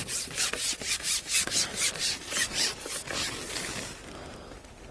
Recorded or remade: recorded